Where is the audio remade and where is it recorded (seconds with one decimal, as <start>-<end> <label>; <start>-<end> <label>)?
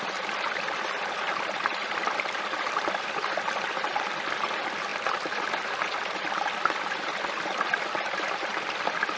0.0-9.2 recorded